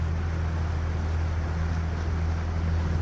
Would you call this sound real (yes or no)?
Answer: yes